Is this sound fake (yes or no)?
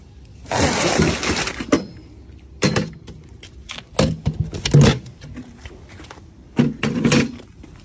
no